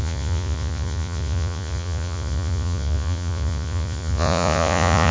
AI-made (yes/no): yes